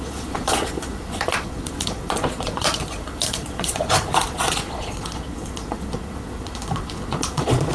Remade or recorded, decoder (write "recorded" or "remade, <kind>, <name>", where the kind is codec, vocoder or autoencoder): remade, vocoder, Vocos